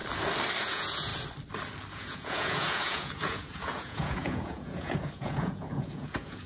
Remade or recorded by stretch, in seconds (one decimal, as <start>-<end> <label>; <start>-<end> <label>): 0.0-0.6 recorded; 0.6-1.1 remade; 1.1-1.9 recorded; 1.9-6.5 remade